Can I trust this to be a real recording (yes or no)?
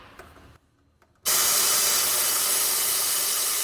yes